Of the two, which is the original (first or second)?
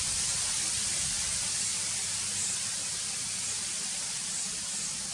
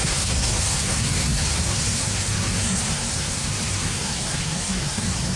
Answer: first